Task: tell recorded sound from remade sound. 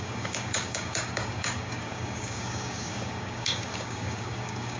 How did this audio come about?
remade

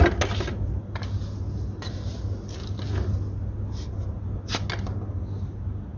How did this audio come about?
recorded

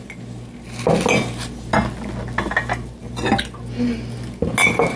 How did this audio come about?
recorded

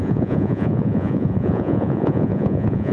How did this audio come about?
remade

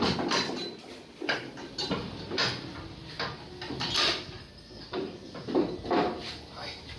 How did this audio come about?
recorded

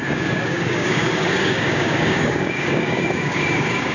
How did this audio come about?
remade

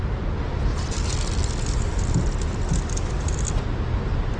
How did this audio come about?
recorded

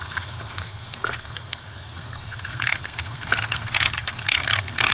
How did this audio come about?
remade